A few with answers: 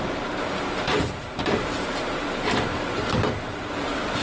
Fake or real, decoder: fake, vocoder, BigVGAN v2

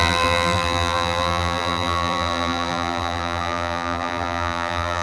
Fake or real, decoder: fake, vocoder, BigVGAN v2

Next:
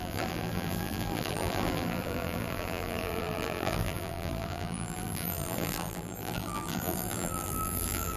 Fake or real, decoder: fake, vocoder, BigVGAN v2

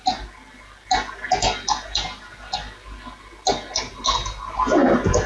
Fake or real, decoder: real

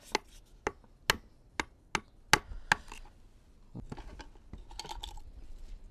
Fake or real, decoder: real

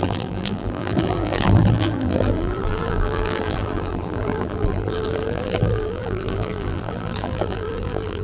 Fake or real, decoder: fake, vocoder, BigVGAN v2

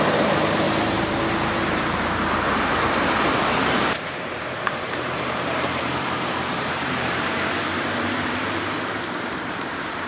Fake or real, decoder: fake, vocoder, BigVGAN v2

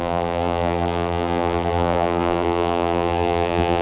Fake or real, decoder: fake, vocoder, BigVGAN v2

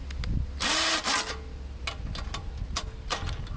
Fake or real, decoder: real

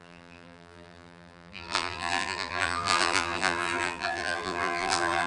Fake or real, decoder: fake, vocoder, BigVGAN v2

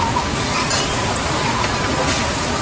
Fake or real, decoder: real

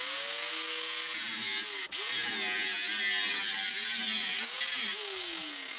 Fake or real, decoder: real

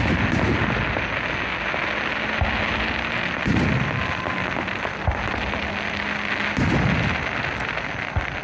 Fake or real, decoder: real